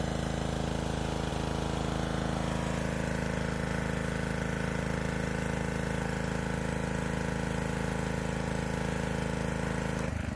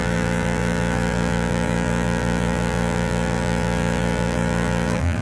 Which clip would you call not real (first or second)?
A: second